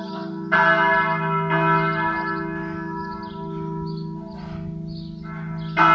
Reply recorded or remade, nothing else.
recorded